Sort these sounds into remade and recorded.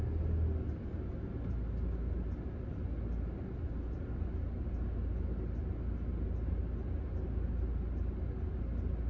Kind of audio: recorded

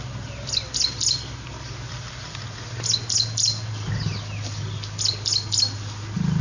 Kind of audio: recorded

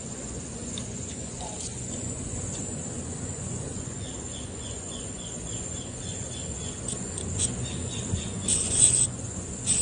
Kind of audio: remade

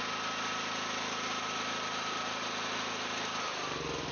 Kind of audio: recorded